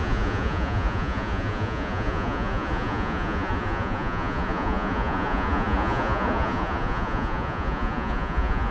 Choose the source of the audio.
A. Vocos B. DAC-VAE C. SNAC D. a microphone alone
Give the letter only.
A